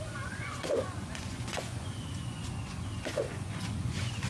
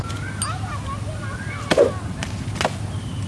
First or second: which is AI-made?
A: first